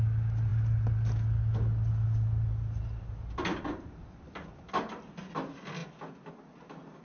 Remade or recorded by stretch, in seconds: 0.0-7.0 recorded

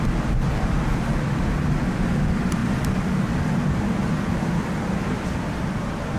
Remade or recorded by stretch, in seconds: 0.0-6.2 recorded

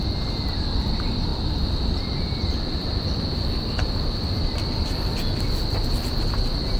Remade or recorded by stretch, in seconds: 0.0-1.3 recorded; 1.3-5.4 remade; 5.4-6.8 recorded

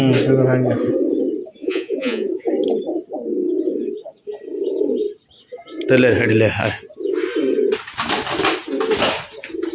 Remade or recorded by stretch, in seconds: 0.0-1.6 recorded; 1.6-2.5 remade; 2.5-9.7 recorded

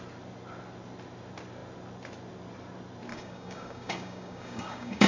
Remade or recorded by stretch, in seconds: 0.0-3.1 recorded; 3.1-5.1 remade

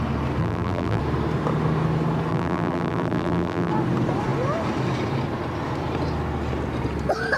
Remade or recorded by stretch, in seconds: 0.0-0.4 recorded; 0.4-1.0 remade; 1.0-2.3 recorded; 2.3-3.7 remade; 3.7-7.4 recorded

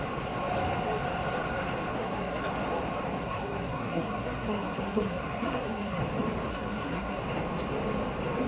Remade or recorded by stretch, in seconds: 0.0-1.9 recorded; 1.9-2.4 remade; 2.4-3.2 recorded; 3.2-6.0 remade; 6.0-6.5 recorded; 6.5-7.2 remade; 7.2-8.5 recorded